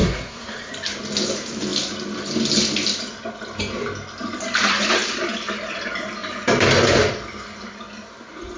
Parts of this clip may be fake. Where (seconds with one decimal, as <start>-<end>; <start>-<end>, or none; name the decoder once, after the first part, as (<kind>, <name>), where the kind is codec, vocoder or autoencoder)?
0.0-0.7 (codec, SNAC)